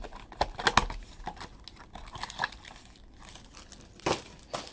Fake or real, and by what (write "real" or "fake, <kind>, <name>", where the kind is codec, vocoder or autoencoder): real